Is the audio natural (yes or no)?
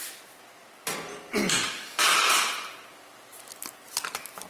yes